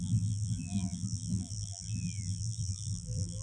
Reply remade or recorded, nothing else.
remade